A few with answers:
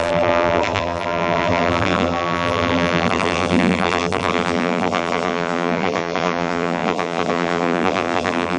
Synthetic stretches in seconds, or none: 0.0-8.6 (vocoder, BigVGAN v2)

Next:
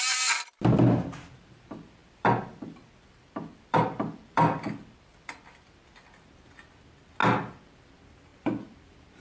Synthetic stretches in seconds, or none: 2.0-5.8 (vocoder, BigVGAN v2)

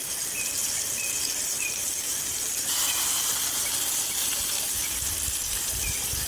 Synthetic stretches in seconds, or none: 0.0-3.7 (vocoder, BigVGAN v2)

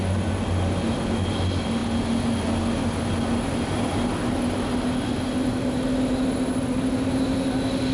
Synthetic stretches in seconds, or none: 5.4-5.9 (vocoder, BigVGAN v2)

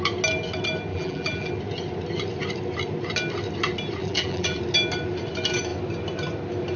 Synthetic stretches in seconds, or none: 0.9-1.5 (vocoder, BigVGAN v2); 4.0-4.6

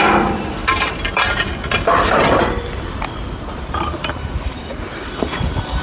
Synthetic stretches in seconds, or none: 0.0-0.6 (vocoder, BigVGAN v2); 3.6-4.7; 5.2-5.8